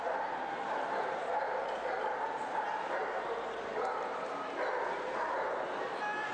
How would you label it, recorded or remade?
recorded